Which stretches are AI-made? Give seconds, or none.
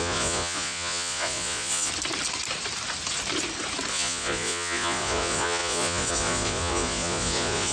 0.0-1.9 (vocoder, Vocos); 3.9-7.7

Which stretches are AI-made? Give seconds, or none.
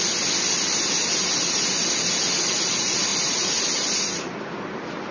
none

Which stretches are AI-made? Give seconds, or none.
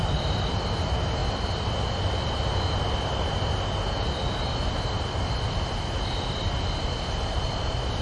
none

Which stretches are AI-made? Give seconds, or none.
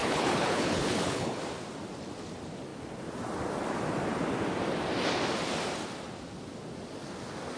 0.0-1.4 (codec, HILCodec)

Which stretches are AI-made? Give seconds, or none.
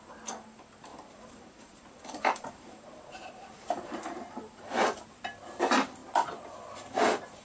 0.9-4.8 (vocoder, BigVGAN v2)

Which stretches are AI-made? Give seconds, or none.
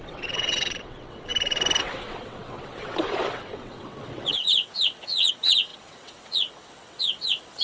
0.0-1.3 (vocoder, WaveNeXt); 1.8-7.6